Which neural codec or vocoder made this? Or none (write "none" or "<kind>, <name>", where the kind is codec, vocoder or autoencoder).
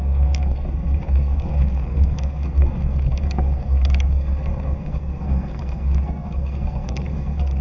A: codec, SNAC